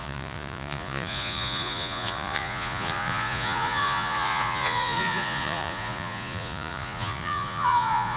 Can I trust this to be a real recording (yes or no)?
no